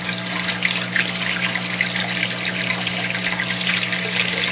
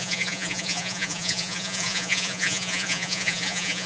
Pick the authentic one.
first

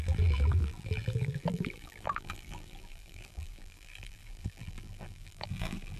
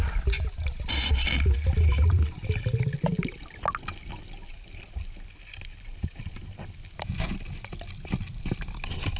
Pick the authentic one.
second